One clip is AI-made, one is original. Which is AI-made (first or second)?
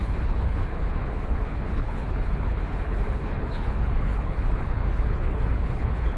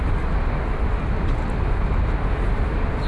first